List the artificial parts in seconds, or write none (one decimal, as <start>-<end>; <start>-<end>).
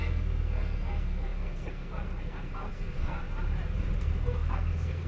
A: 0.0-3.2; 4.0-5.1